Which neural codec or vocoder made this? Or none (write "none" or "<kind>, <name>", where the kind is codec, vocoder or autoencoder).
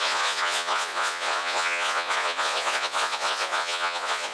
vocoder, Vocos